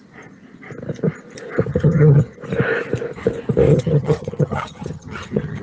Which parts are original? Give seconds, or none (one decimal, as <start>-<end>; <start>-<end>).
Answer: 0.0-1.7; 2.2-3.7